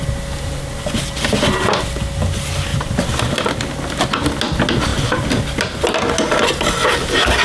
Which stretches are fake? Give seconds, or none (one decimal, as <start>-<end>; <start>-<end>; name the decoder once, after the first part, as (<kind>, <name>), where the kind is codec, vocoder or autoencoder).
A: 2.7-3.2 (vocoder, BigVGAN v2)